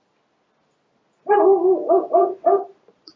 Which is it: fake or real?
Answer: real